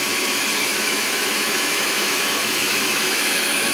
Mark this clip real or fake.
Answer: fake